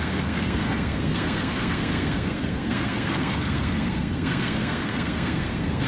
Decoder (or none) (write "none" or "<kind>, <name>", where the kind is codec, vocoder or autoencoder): codec, SNAC